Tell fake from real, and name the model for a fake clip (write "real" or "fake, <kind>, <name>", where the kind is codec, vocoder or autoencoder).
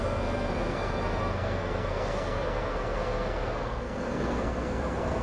fake, codec, SNAC